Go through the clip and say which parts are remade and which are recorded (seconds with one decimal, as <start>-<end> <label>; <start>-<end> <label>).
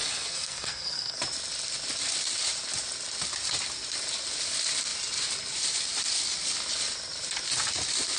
0.0-1.2 remade; 1.2-8.2 recorded